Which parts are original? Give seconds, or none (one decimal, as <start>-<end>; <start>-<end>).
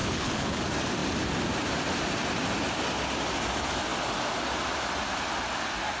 0.6-6.0